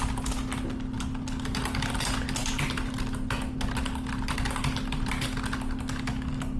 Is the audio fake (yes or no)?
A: no